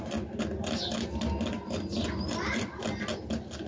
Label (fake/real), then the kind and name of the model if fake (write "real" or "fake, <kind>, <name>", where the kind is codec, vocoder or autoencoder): real